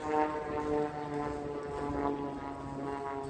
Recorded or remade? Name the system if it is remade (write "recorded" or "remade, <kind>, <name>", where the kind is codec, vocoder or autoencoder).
recorded